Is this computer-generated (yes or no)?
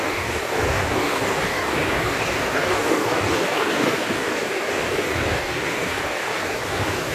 yes